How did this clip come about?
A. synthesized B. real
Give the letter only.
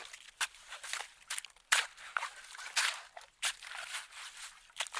B